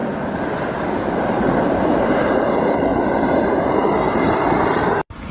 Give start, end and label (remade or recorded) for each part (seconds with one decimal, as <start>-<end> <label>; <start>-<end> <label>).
0.0-1.5 recorded; 1.5-2.9 remade; 2.9-3.7 recorded; 3.7-5.3 remade